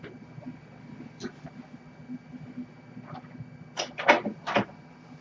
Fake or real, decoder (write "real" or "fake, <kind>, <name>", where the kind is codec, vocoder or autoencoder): real